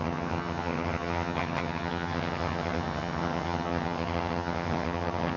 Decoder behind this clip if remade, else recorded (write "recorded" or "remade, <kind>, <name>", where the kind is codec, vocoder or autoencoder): remade, vocoder, HiFi-GAN